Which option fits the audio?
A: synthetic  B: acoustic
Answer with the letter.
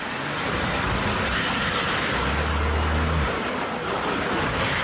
B